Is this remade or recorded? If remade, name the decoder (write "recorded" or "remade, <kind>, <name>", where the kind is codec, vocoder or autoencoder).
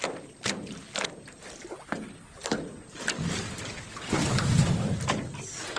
recorded